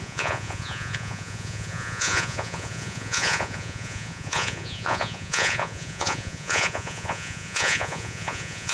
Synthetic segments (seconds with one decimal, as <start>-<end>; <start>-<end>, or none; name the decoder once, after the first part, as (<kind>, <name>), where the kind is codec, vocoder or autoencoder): 0.0-8.7 (vocoder, Vocos)